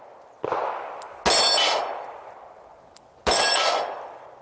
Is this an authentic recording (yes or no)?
yes